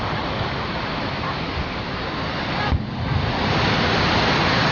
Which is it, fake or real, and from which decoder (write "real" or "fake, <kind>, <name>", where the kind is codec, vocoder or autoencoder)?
fake, vocoder, BigVGAN v2